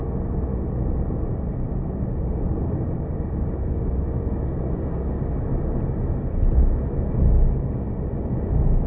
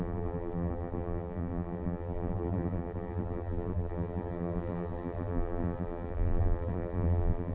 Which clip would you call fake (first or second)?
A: second